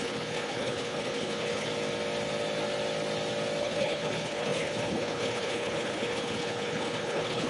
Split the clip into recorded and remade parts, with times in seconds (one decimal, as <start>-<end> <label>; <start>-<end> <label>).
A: 0.0-1.7 remade; 1.7-3.6 recorded; 3.6-7.5 remade